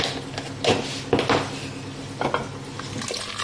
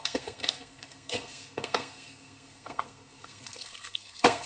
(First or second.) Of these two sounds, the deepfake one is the second